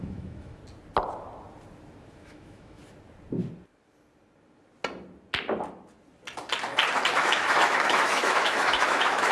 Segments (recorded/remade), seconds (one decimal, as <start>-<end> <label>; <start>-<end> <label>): 0.0-0.6 remade; 0.6-2.1 recorded; 2.1-2.8 remade; 2.8-7.1 recorded; 7.1-9.3 remade